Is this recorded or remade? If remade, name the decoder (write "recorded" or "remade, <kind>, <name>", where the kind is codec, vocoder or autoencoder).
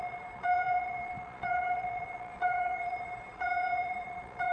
remade, vocoder, Vocos